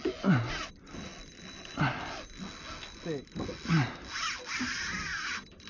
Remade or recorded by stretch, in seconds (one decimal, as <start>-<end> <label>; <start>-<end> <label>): 0.0-5.7 recorded

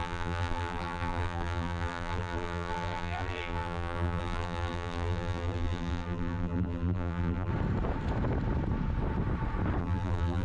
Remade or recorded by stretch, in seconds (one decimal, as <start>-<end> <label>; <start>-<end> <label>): 0.0-7.5 remade; 7.5-9.8 recorded; 9.8-10.4 remade

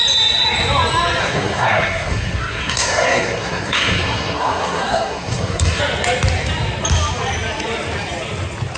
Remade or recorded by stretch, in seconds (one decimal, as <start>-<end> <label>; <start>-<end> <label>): 0.0-1.2 recorded; 1.2-5.8 remade; 5.8-8.8 recorded

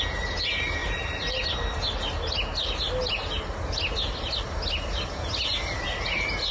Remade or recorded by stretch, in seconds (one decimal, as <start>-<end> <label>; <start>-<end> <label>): 0.0-0.8 recorded; 0.8-1.6 remade; 1.6-6.5 recorded

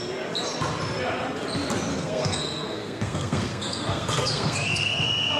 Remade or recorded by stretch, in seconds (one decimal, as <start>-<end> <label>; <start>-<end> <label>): 0.0-1.9 recorded; 1.9-5.4 remade

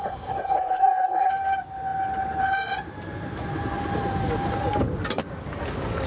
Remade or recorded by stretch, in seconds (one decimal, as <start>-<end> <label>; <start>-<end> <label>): 0.0-1.3 remade; 1.3-6.1 recorded

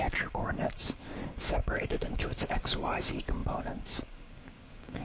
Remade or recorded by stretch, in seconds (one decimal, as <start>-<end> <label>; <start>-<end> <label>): 0.0-5.0 remade